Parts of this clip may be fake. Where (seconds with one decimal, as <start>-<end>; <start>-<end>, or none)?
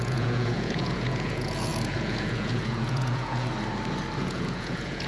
0.0-3.5; 4.2-5.1